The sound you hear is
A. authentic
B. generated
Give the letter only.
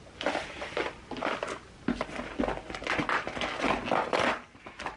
A